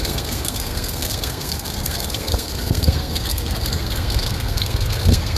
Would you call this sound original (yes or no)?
no